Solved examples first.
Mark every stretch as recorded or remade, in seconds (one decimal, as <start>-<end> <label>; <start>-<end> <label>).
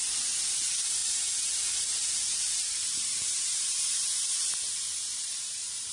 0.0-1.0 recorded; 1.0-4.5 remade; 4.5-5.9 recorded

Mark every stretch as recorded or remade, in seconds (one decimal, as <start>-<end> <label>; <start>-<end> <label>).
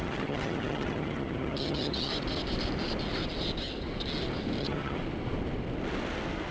0.0-2.1 remade; 2.1-4.6 recorded; 4.6-5.0 remade; 5.0-6.5 recorded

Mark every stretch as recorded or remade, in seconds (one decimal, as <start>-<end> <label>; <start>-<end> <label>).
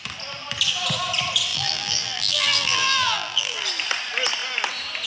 0.0-1.5 recorded; 1.5-3.6 remade; 3.6-5.1 recorded